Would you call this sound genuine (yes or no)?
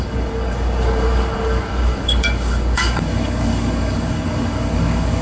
no